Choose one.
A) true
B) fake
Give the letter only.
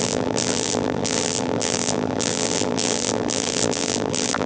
B